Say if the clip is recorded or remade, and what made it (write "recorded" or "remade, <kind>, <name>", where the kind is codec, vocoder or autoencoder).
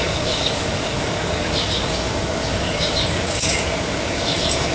remade, codec, DAC